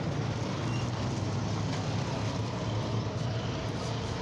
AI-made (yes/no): yes